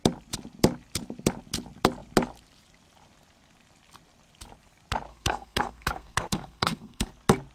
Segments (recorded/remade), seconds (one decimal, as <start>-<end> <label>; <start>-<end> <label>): 0.0-5.1 recorded; 5.1-7.1 remade; 7.1-7.5 recorded